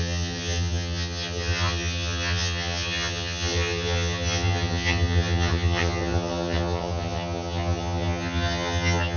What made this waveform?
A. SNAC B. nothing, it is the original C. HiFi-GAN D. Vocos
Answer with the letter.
C